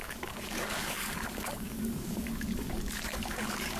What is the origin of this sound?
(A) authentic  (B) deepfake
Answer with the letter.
B